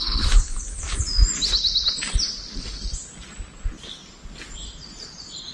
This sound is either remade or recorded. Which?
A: recorded